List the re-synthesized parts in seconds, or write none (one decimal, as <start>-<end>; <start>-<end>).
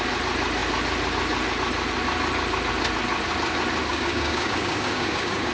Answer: 3.9-5.5